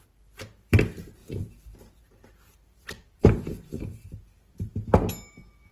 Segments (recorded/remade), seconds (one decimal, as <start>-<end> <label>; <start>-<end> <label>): 0.0-1.2 remade; 1.2-2.0 recorded; 2.0-4.7 remade; 4.7-5.3 recorded; 5.3-5.7 remade